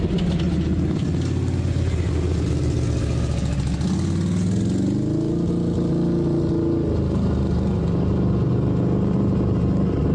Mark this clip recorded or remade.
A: recorded